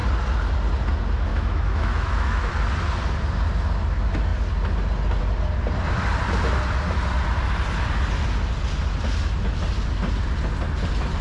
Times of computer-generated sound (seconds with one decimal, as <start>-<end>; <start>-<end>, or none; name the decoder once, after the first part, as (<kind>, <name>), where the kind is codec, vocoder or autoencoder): 1.3-2.5 (autoencoder, DAC-VAE)